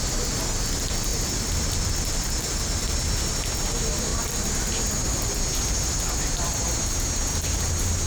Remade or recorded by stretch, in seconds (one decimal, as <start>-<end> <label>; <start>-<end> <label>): 0.0-1.1 recorded; 1.1-1.9 remade; 1.9-8.1 recorded